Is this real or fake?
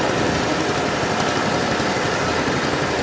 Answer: real